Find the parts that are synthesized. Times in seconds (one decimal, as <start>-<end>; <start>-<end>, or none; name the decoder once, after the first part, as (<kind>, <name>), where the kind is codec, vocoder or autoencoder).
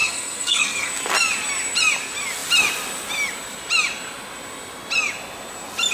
0.0-0.9 (codec, SNAC)